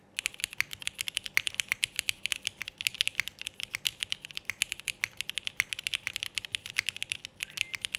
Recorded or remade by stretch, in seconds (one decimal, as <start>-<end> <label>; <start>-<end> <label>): 0.0-8.0 recorded